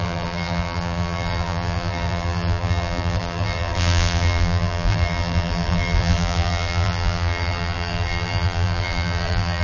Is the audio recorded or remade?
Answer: remade